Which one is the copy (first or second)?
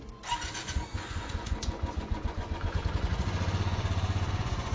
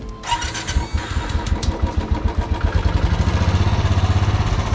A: first